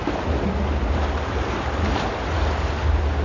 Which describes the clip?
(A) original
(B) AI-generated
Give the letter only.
A